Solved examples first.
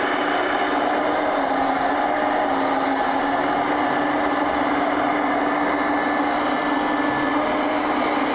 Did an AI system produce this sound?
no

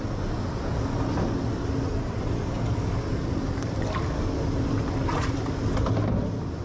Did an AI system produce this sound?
no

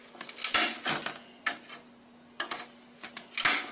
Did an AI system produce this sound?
no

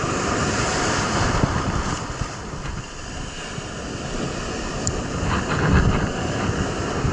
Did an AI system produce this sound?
no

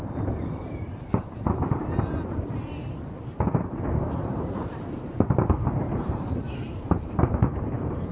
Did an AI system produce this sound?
yes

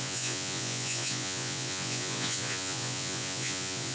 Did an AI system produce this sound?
yes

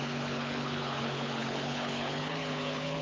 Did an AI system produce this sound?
yes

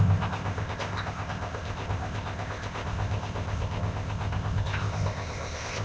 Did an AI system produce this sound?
yes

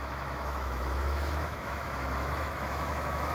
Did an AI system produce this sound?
yes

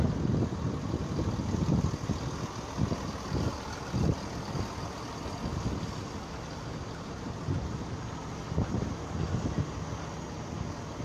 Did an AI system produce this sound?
no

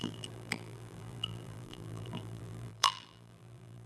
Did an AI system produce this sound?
yes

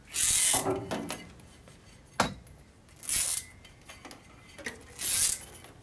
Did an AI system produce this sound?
no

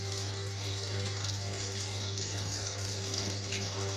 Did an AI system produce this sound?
yes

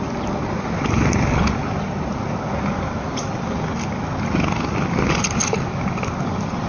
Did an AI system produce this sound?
no